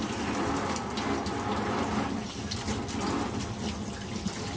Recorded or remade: recorded